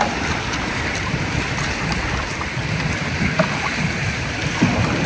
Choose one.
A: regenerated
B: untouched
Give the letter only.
B